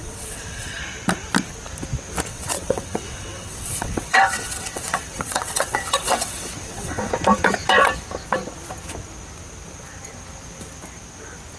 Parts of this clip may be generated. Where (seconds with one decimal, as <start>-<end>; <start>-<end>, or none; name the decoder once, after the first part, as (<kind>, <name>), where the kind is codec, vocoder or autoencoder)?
0.0-0.8 (vocoder, WaveNeXt); 2.3-7.1